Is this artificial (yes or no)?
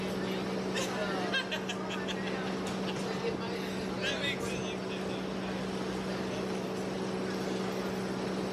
no